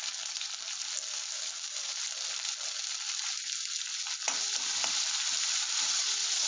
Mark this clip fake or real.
real